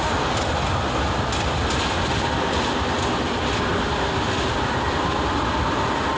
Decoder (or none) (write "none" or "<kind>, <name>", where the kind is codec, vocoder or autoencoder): none